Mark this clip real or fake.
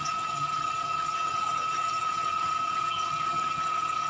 fake